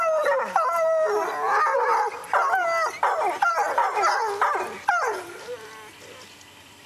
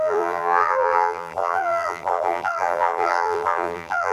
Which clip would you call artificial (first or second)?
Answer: second